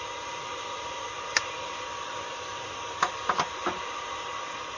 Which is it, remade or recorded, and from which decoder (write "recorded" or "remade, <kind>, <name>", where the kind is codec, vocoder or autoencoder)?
recorded